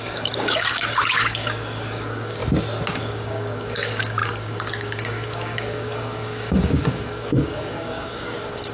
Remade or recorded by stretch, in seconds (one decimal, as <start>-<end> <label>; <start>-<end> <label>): 0.0-2.4 remade; 2.4-2.9 recorded; 2.9-8.7 remade